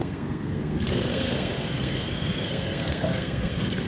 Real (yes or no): no